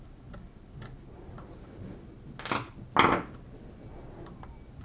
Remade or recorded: recorded